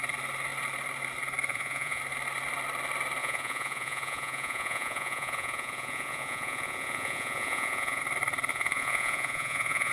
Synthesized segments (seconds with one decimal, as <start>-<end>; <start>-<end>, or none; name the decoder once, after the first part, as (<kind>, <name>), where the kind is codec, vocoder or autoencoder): 1.5-2.0 (vocoder, Vocos); 3.2-8.0; 8.5-9.9